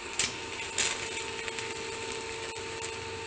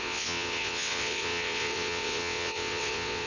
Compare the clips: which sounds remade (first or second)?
second